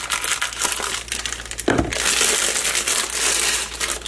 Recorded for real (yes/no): yes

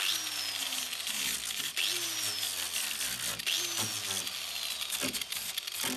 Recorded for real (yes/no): yes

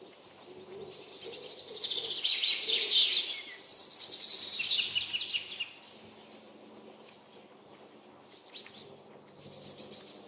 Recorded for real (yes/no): yes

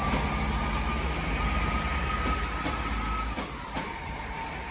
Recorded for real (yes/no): yes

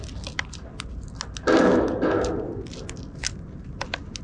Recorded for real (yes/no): yes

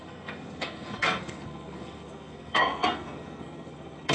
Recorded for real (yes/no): no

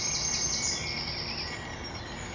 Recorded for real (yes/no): yes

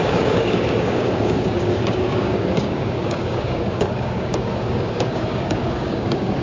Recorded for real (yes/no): no